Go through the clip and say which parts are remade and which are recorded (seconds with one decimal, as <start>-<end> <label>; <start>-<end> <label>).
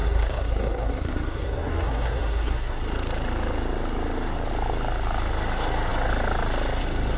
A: 0.0-2.8 remade; 2.8-7.2 recorded